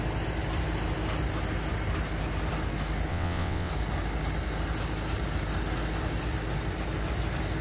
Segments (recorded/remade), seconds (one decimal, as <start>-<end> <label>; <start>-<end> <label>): 0.0-3.1 recorded; 3.1-3.7 remade; 3.7-7.6 recorded